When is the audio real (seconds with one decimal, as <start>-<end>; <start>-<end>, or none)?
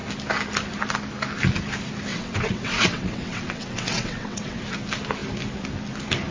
0.0-2.1; 4.6-6.3